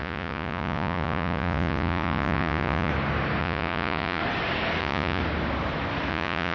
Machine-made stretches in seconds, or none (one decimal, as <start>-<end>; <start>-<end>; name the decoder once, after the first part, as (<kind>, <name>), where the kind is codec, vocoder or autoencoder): 0.0-2.9 (vocoder, Vocos); 3.4-4.2; 4.8-5.2; 6.1-6.5